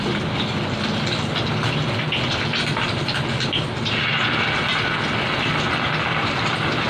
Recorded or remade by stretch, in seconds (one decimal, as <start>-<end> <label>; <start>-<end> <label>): 0.0-6.1 recorded; 6.1-6.9 remade